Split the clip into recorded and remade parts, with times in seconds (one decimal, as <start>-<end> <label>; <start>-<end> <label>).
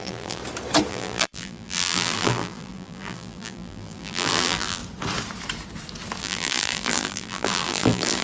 0.0-0.4 remade; 0.4-0.9 recorded; 0.9-4.8 remade; 4.8-6.2 recorded; 6.2-8.2 remade